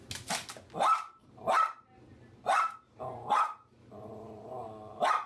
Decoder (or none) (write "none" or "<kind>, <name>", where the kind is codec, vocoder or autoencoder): none